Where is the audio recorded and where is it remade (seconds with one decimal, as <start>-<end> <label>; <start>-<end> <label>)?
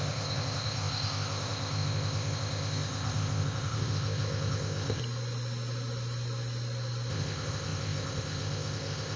0.0-5.0 remade; 5.0-7.1 recorded; 7.1-9.2 remade